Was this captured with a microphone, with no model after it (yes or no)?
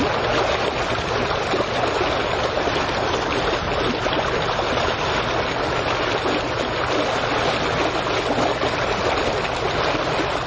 yes